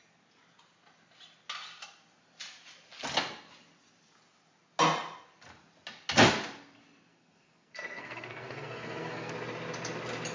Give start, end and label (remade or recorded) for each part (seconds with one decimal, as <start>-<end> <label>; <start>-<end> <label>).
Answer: 0.0-7.1 recorded; 7.1-9.3 remade; 9.3-10.3 recorded